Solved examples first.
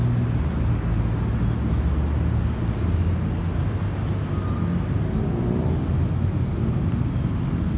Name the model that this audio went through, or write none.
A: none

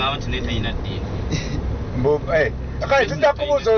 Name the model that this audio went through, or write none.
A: none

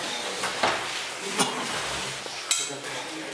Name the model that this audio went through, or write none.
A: none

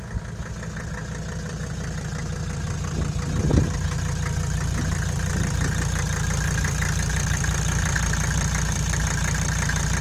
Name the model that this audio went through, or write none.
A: none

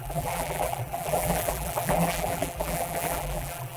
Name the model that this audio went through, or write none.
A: vocoder, BigVGAN v2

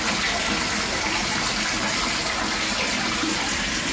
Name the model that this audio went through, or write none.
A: none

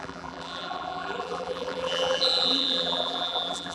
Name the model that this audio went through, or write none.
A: vocoder, BigVGAN v2